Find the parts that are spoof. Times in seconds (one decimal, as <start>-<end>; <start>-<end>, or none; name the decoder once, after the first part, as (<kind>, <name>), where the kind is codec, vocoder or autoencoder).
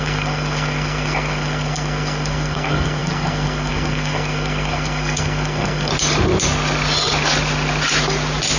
0.0-5.9 (codec, SNAC)